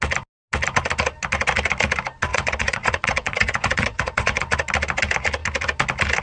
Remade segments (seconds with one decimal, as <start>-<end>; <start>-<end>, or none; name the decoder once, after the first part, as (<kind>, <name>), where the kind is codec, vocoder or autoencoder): 2.3-4.4 (vocoder, Vocos)